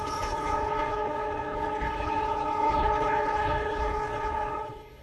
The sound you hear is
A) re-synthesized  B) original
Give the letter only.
A